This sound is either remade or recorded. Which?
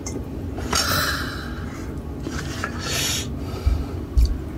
remade